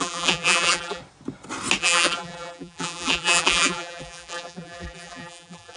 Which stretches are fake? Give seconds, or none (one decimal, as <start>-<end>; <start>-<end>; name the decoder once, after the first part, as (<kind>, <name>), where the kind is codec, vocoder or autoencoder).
0.0-1.0 (vocoder, BigVGAN v2); 1.8-5.8